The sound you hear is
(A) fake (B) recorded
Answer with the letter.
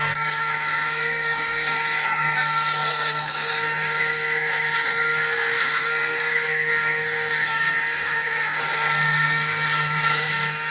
A